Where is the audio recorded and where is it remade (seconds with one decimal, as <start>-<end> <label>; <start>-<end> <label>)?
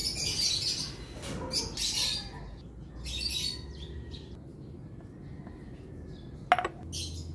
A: 0.0-7.3 recorded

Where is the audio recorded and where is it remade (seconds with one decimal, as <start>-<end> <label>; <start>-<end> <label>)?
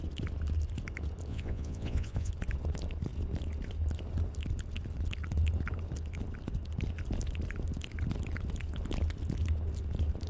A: 0.0-1.3 recorded; 1.3-2.3 remade; 2.3-10.3 recorded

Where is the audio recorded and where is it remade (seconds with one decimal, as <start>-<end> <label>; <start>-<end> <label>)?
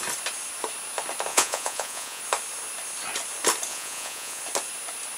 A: 0.0-1.3 recorded; 1.3-2.2 remade; 2.2-3.7 recorded; 3.7-4.4 remade; 4.4-5.2 recorded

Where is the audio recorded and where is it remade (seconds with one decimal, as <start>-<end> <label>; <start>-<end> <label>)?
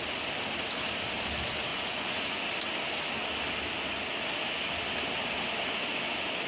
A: 0.0-1.7 recorded; 1.7-2.4 remade; 2.4-6.5 recorded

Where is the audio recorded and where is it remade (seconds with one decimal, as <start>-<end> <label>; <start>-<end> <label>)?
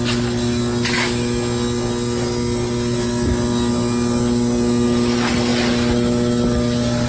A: 0.0-7.1 recorded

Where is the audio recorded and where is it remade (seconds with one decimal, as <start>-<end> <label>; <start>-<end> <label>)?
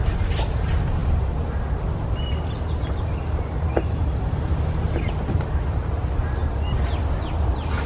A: 0.0-7.9 recorded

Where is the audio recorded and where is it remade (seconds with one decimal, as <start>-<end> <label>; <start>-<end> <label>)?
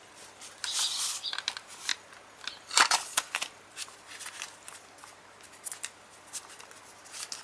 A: 0.0-7.4 recorded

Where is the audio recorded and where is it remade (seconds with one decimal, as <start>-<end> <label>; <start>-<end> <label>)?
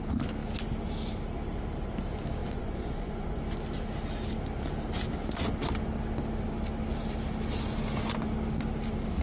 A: 0.0-2.4 recorded; 2.4-3.4 remade; 3.4-9.2 recorded